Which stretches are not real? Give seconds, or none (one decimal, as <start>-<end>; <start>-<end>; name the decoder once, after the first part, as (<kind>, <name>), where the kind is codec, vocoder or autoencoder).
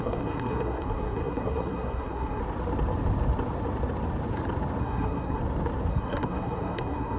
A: 0.0-2.4 (codec, SNAC); 4.8-5.4; 5.9-7.2